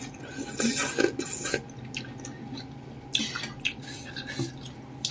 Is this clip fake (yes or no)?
no